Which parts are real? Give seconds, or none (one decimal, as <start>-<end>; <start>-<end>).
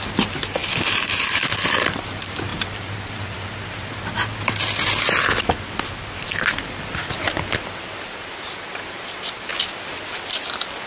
0.6-1.7; 9.5-10.3